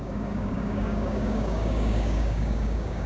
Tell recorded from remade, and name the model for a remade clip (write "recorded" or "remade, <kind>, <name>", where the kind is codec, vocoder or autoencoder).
remade, codec, DAC